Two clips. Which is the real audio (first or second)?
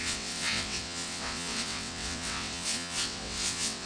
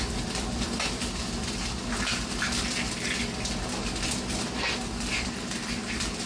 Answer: second